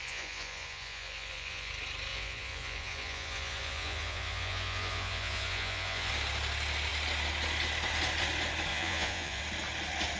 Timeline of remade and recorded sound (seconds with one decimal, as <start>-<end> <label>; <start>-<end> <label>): 0.0-1.7 remade; 1.7-2.1 recorded; 2.1-6.1 remade; 6.1-8.7 recorded; 8.7-9.4 remade; 9.4-10.2 recorded